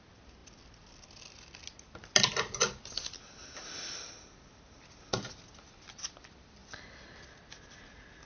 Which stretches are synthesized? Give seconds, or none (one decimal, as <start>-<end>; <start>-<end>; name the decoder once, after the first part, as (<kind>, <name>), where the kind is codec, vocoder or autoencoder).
none